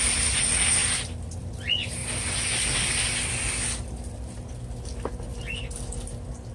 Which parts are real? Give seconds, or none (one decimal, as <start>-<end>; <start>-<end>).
0.0-0.8; 1.5-6.5